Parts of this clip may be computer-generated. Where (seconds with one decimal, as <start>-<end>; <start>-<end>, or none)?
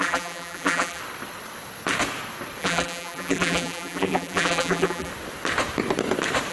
0.0-1.0; 2.6-5.1